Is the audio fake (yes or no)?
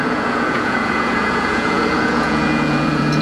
yes